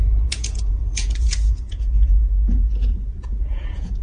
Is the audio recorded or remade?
remade